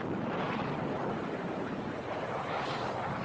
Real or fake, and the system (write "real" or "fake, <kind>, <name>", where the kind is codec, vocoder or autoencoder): real